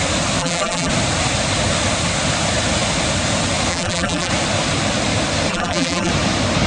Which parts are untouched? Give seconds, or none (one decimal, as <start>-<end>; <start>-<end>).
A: 0.0-0.4; 0.9-3.7; 4.3-5.5; 6.1-6.7